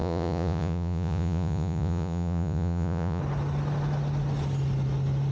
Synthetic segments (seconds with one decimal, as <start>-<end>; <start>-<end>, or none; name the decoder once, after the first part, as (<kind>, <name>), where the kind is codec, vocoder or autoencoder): 0.0-3.2 (vocoder, Vocos)